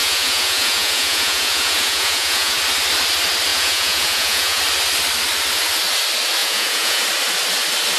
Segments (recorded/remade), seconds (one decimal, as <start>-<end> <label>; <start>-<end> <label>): 0.0-2.6 remade; 2.6-3.5 recorded; 3.5-4.6 remade; 4.6-6.4 recorded; 6.4-7.0 remade; 7.0-8.0 recorded